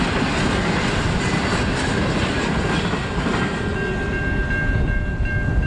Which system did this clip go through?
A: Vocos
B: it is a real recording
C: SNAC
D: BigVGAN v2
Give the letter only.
B